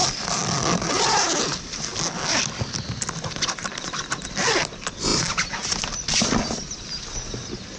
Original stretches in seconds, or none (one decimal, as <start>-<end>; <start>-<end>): 0.0-7.8